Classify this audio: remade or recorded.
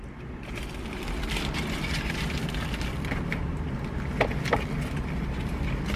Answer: recorded